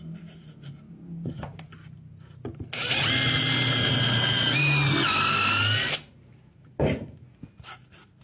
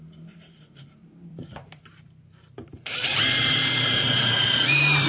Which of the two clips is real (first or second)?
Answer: first